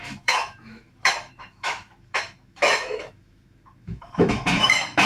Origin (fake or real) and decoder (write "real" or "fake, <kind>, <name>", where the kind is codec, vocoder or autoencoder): fake, autoencoder, DAC-VAE